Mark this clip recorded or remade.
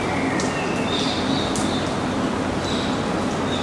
recorded